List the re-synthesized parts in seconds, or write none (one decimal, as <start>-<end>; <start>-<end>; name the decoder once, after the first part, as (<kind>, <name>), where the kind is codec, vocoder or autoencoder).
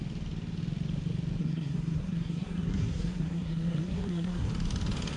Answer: 1.4-4.5 (codec, SNAC)